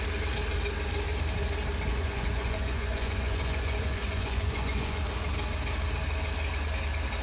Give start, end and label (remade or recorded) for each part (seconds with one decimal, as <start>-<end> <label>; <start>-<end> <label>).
0.0-1.9 recorded; 1.9-5.0 remade; 5.0-7.2 recorded